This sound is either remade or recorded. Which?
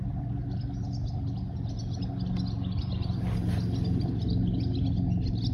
recorded